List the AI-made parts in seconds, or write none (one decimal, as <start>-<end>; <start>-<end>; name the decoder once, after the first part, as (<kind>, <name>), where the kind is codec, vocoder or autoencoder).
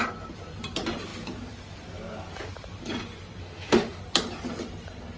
3.4-4.0 (autoencoder, DAC-VAE)